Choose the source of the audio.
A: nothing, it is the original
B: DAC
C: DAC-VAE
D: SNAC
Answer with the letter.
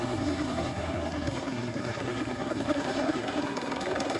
D